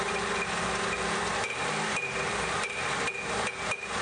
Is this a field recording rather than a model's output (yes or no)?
yes